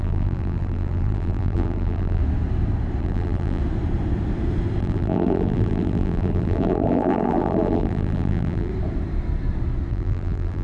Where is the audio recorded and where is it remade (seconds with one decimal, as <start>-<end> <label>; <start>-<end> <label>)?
0.0-2.2 remade; 2.2-3.0 recorded; 3.0-3.6 remade; 3.6-4.8 recorded; 4.8-8.7 remade; 8.7-9.9 recorded; 9.9-10.6 remade